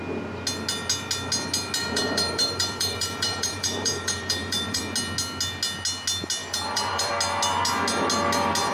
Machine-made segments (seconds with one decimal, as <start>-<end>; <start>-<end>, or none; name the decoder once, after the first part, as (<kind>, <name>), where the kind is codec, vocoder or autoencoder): 1.8-4.8 (vocoder, BigVGAN v2); 6.4-7.1